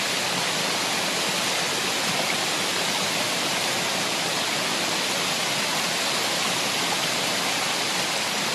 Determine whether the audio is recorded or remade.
recorded